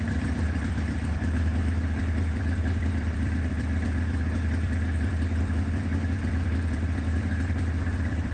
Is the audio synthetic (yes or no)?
yes